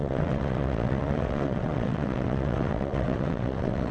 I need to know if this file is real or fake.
fake